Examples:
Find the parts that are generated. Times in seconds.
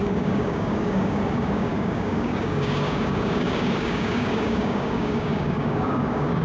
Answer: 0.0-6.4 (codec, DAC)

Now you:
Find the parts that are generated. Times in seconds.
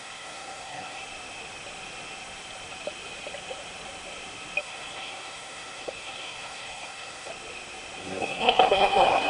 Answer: 0.0-1.0 (codec, SNAC); 4.6-7.3; 8.0-9.3